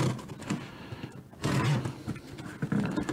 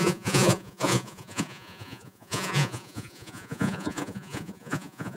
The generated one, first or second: second